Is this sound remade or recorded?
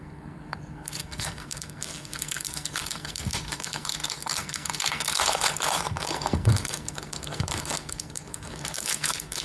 remade